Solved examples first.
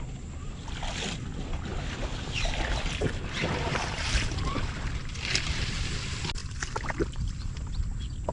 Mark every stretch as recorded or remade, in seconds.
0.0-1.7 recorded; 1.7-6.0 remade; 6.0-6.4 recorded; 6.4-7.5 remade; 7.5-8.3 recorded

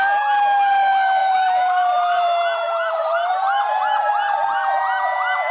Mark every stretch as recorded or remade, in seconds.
0.0-1.2 recorded; 1.2-4.1 remade; 4.1-5.5 recorded

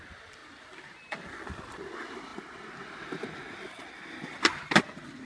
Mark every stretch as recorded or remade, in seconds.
0.0-0.4 remade; 0.4-1.6 recorded; 1.6-5.2 remade

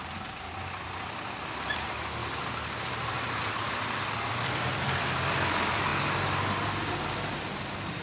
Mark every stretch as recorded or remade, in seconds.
0.0-2.2 remade; 2.2-2.9 recorded; 2.9-5.9 remade; 5.9-7.3 recorded; 7.3-8.0 remade